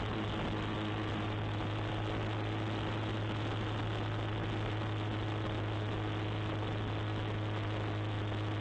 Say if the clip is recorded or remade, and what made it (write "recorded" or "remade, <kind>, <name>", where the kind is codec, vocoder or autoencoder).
recorded